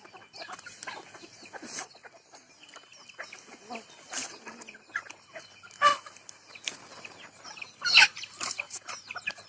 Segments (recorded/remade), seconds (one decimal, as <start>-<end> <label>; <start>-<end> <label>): 0.0-9.5 recorded

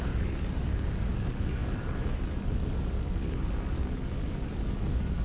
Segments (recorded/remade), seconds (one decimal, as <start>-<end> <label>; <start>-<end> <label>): 0.0-5.2 remade

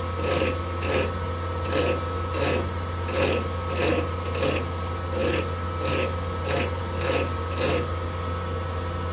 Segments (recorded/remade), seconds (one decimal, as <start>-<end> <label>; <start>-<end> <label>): 0.0-9.1 recorded

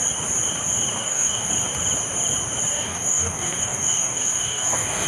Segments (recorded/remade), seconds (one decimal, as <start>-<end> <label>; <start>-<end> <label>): 0.0-1.0 recorded; 1.0-1.5 remade; 1.5-2.7 recorded; 2.7-5.1 remade

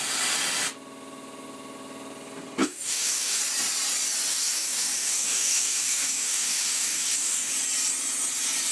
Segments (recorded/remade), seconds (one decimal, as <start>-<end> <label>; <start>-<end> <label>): 0.0-2.6 recorded; 2.6-3.4 remade; 3.4-4.3 recorded; 4.3-7.5 remade; 7.5-8.7 recorded

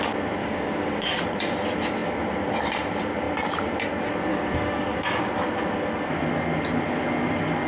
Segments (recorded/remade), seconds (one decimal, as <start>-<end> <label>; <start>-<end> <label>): 0.0-0.4 recorded; 0.4-1.2 remade; 1.2-4.3 recorded; 4.3-5.2 remade; 5.2-7.7 recorded

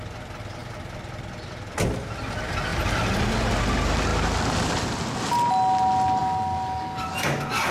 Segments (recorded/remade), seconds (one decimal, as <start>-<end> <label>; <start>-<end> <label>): 0.0-6.2 recorded; 6.2-7.1 remade; 7.1-7.7 recorded

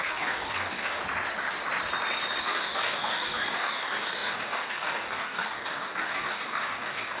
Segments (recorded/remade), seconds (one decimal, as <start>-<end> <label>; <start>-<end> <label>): 0.0-1.0 remade; 1.0-2.4 recorded; 2.4-7.2 remade